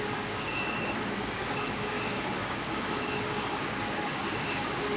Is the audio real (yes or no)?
no